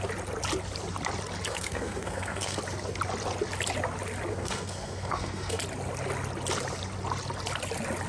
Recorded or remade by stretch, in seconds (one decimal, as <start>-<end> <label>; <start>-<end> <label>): 0.0-1.5 recorded; 1.5-2.6 remade; 2.6-4.3 recorded; 4.3-5.6 remade; 5.6-8.1 recorded